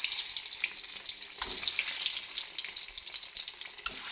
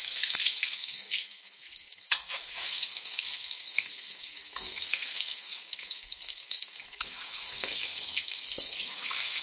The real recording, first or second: first